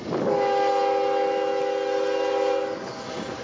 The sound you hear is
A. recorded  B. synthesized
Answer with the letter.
A